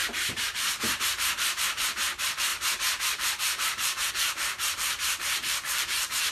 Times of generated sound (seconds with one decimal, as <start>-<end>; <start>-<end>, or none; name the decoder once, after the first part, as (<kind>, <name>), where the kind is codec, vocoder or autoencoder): 0.0-6.3 (vocoder, BigVGAN v2)